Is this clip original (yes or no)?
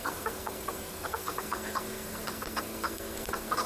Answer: no